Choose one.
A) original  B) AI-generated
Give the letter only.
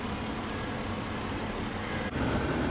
A